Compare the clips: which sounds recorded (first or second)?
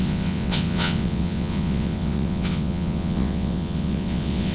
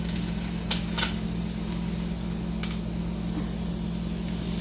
second